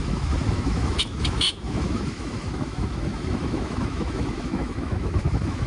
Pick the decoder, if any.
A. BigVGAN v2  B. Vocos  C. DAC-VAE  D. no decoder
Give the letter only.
C